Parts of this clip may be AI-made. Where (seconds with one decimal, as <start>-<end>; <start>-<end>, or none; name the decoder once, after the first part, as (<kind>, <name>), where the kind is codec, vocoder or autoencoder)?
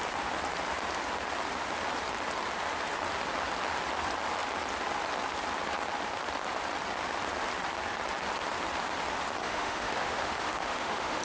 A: 9.4-11.2 (autoencoder, DAC-VAE)